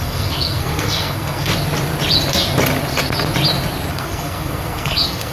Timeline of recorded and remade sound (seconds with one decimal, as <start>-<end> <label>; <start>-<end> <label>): 0.0-1.5 remade; 1.5-3.9 recorded; 3.9-5.3 remade